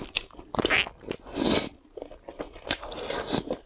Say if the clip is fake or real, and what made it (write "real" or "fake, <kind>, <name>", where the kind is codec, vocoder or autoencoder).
real